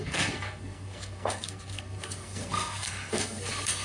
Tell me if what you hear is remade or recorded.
remade